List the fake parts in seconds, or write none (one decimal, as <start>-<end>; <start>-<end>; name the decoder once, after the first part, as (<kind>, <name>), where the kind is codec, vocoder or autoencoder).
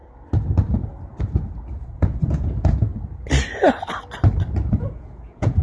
1.8-2.9 (vocoder, Vocos); 4.7-5.6